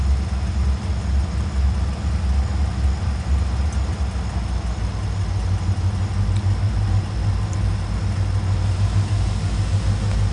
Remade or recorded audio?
recorded